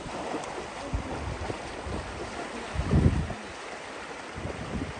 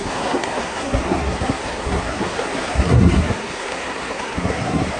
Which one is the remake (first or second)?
second